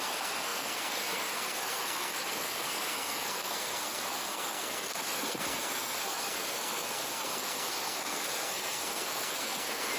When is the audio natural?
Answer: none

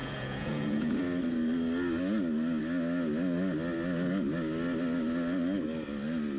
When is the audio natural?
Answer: 1.0-6.4

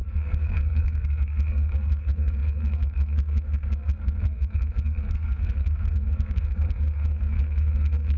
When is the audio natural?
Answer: none

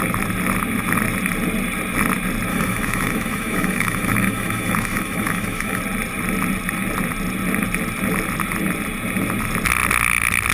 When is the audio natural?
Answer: 0.0-2.5; 5.8-10.5

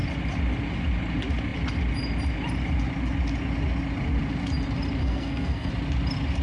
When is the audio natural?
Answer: 0.0-5.0; 5.7-6.4

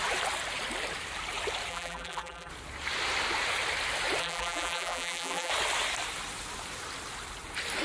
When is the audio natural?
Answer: 0.0-1.7; 2.5-4.2; 5.5-7.8

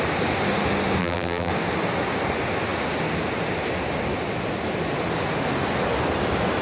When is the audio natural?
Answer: 0.0-1.0; 1.5-6.6

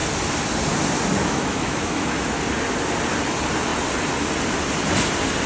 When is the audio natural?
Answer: 0.0-1.2; 2.2-5.5